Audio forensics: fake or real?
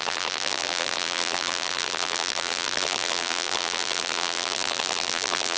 fake